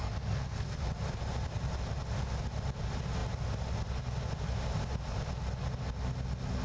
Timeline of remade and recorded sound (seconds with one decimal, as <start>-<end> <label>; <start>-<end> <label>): 0.0-0.8 remade; 0.8-6.6 recorded